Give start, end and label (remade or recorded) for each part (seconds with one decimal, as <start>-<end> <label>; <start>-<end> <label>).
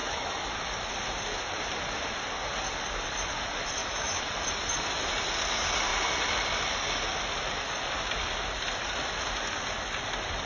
0.0-0.9 remade; 0.9-3.8 recorded; 3.8-4.3 remade; 4.3-10.5 recorded